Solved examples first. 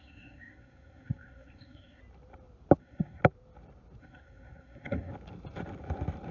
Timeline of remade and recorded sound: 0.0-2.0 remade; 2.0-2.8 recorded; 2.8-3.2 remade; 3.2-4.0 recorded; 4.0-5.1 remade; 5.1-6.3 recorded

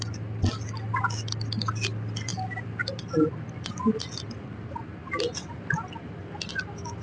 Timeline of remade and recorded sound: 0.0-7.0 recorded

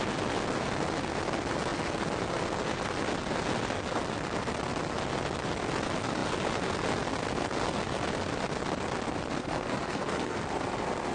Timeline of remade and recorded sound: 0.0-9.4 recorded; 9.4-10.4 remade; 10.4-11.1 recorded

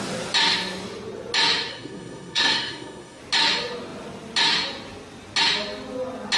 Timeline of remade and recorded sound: 0.0-1.7 recorded; 1.7-3.2 remade; 3.2-6.4 recorded

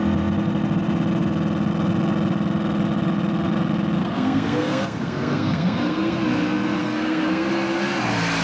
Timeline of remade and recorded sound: 0.0-4.0 recorded; 4.0-6.2 remade; 6.2-6.8 recorded; 6.8-7.5 remade; 7.5-8.4 recorded

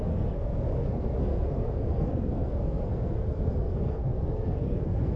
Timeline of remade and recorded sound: 0.0-5.2 remade